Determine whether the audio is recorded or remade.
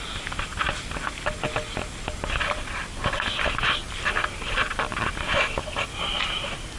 recorded